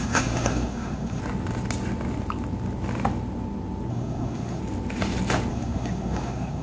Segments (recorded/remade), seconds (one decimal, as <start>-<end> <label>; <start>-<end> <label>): 0.0-1.2 remade; 1.2-3.9 recorded; 3.9-4.6 remade; 4.6-5.5 recorded; 5.5-6.6 remade